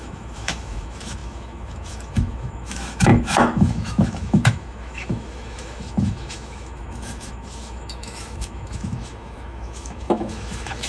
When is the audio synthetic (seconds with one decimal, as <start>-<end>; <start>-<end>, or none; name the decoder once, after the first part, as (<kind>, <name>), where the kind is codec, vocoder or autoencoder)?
0.0-10.9 (autoencoder, DAC-VAE)